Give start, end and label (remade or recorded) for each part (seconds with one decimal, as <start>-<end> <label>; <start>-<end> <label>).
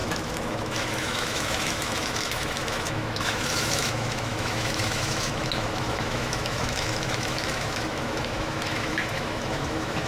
0.0-10.1 remade